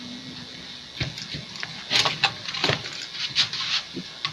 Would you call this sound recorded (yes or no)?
yes